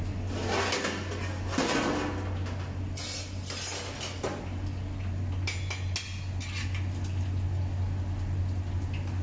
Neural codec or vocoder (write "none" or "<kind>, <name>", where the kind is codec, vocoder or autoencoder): none